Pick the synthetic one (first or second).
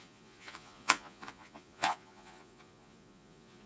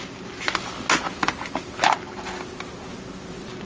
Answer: first